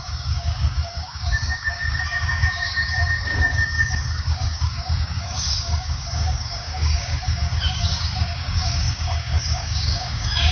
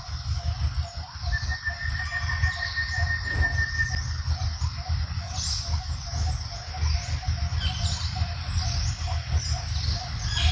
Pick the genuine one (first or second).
second